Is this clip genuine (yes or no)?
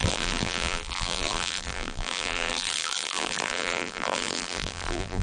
no